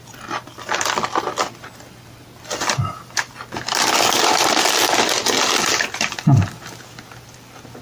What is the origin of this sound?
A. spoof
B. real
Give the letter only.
B